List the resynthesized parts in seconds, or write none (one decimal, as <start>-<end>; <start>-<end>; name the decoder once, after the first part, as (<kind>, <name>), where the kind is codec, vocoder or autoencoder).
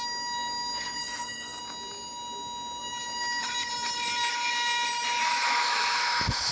1.0-1.6 (autoencoder, DAC-VAE); 5.3-6.5